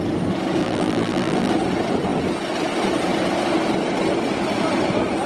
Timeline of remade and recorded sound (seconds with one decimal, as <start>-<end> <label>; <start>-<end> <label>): 0.0-0.6 recorded; 0.6-1.5 remade; 1.5-5.3 recorded